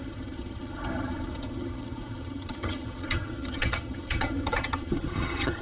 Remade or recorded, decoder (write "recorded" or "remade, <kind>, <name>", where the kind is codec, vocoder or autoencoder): remade, vocoder, HiFi-GAN